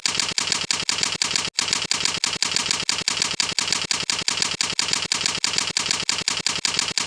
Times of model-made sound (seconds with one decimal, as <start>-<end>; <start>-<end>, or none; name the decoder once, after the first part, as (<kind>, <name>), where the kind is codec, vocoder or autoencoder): none